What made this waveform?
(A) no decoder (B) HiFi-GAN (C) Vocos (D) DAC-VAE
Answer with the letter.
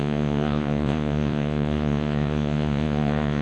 C